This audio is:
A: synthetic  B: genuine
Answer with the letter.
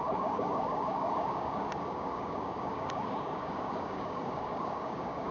A